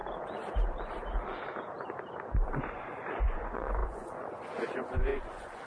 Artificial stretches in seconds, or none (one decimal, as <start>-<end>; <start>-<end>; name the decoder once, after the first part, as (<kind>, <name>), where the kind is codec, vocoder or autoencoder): 2.6-5.7 (vocoder, Vocos)